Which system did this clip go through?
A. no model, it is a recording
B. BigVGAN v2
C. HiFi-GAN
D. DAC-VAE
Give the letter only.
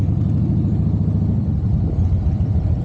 A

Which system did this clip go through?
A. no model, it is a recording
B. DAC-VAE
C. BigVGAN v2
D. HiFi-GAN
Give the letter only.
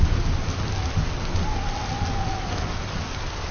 A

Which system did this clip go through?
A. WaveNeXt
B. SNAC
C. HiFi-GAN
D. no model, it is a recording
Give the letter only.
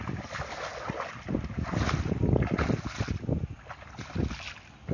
D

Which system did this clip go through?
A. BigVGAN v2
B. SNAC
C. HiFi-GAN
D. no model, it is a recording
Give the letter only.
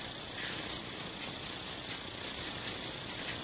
D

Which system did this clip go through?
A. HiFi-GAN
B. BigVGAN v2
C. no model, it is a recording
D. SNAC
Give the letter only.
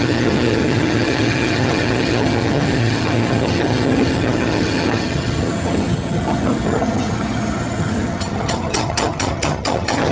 A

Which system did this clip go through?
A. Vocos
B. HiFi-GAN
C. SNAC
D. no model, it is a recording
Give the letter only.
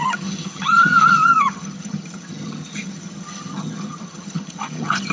B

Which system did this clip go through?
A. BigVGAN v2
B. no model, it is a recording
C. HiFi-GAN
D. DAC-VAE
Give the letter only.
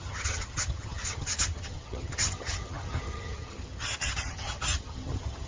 C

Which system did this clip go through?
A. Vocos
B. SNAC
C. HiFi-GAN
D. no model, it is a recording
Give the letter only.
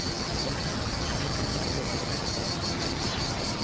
C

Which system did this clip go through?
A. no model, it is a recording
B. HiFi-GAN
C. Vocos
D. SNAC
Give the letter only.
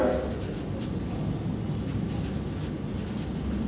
A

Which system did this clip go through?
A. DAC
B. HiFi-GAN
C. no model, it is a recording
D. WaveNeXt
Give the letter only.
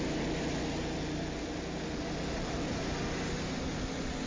C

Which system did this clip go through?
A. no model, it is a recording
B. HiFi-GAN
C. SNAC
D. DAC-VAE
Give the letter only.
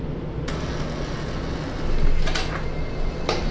A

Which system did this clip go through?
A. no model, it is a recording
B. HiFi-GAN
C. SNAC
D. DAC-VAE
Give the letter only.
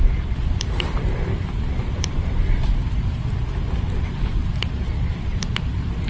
A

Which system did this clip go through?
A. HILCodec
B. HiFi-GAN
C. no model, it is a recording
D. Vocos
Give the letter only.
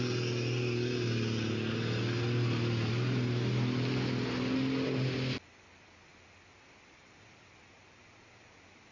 C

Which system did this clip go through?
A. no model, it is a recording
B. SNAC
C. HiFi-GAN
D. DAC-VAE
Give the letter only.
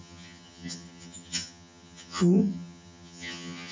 C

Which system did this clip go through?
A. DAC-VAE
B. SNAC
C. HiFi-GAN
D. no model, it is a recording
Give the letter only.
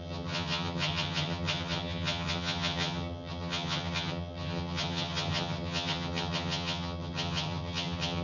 C